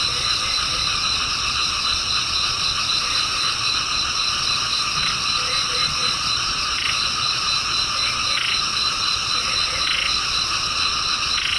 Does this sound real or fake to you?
fake